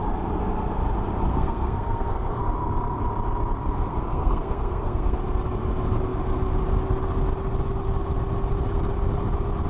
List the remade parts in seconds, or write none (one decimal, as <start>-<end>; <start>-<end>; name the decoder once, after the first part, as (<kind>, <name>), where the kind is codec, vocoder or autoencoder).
1.3-2.4 (codec, SNAC); 3.9-5.2

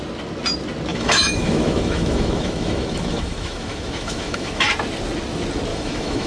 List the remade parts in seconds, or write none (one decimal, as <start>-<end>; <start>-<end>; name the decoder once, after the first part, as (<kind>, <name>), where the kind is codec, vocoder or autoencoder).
0.9-4.7 (autoencoder, DAC-VAE); 5.7-6.3